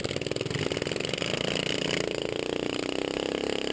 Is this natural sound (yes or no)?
yes